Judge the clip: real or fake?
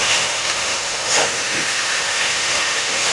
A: fake